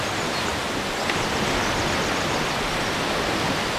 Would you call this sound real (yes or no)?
yes